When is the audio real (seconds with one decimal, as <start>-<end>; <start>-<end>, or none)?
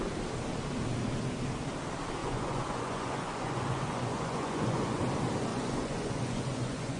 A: 0.0-2.2; 5.0-5.5